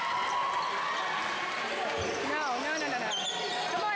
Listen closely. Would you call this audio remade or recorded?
recorded